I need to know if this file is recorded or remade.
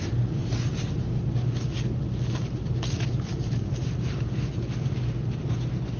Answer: recorded